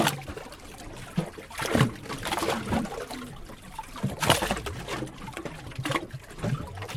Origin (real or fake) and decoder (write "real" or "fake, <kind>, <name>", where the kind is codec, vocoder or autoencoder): real